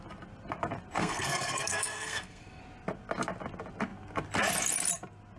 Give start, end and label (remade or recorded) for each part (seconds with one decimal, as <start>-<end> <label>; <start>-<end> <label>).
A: 0.0-1.0 recorded; 1.0-2.6 remade; 2.6-5.4 recorded